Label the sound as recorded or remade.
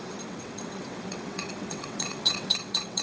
remade